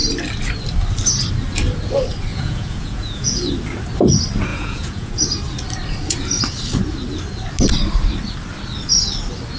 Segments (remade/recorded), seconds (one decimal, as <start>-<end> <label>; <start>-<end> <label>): 0.0-2.3 recorded; 2.3-3.4 remade; 3.4-4.5 recorded; 4.5-5.1 remade; 5.1-9.6 recorded